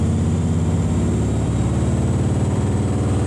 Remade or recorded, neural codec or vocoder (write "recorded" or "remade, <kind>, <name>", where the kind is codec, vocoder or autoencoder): remade, vocoder, BigVGAN v2